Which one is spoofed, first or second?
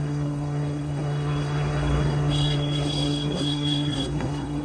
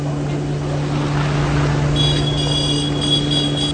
first